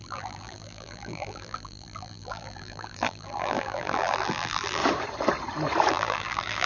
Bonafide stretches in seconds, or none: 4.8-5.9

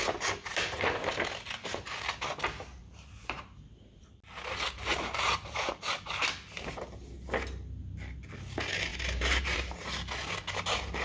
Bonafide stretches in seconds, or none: 0.0-2.8; 4.0-4.9; 5.9-8.9; 9.7-11.0

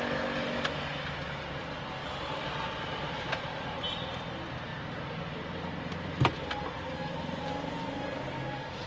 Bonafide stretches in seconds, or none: 0.0-2.0; 3.9-8.9